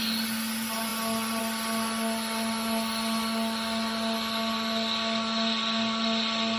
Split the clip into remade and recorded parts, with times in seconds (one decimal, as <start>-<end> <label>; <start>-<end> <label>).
0.0-6.6 recorded

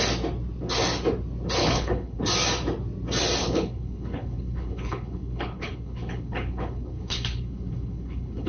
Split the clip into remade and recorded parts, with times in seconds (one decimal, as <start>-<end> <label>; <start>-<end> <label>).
0.0-1.6 recorded; 1.6-2.2 remade; 2.2-3.4 recorded; 3.4-8.5 remade

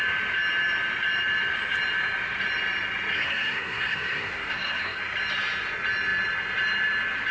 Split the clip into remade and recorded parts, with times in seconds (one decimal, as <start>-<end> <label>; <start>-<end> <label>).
0.0-3.1 recorded; 3.1-5.0 remade; 5.0-7.3 recorded

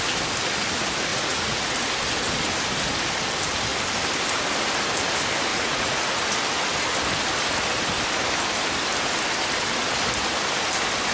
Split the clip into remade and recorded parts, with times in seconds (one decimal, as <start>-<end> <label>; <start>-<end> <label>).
0.0-1.1 recorded; 1.1-1.7 remade; 1.7-5.5 recorded; 5.5-6.2 remade; 6.2-11.1 recorded